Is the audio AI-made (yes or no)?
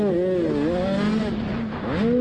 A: no